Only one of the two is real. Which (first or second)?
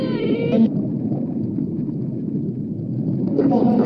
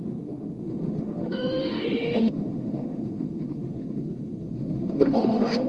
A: first